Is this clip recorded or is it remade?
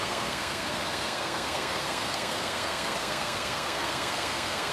remade